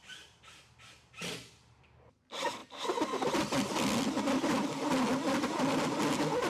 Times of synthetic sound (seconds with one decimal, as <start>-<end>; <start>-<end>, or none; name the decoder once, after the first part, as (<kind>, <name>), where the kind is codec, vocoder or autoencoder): none